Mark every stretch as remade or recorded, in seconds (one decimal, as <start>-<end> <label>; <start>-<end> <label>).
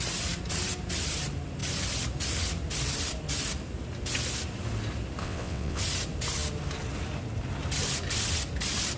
0.0-5.2 recorded; 5.2-5.8 remade; 5.8-9.0 recorded